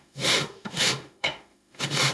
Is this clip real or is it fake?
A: fake